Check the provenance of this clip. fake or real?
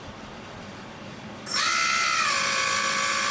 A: fake